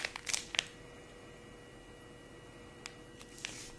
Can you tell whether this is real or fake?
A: real